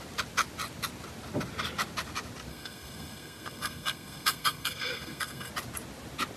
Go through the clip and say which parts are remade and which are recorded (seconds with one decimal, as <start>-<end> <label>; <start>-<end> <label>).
0.0-2.5 recorded; 2.5-5.5 remade; 5.5-6.4 recorded